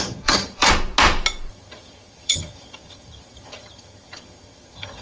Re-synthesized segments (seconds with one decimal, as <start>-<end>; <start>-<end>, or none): 0.0-0.7; 1.5-5.0